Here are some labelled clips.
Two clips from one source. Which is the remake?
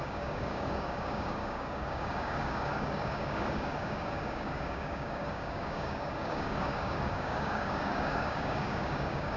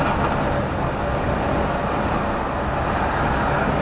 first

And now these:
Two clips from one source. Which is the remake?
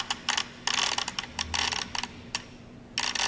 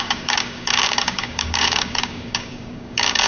second